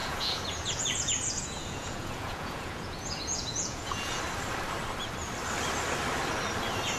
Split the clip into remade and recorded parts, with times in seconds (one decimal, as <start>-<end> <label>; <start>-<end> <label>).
0.0-4.2 remade; 4.2-7.0 recorded